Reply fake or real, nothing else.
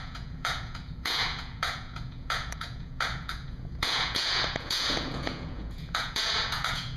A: fake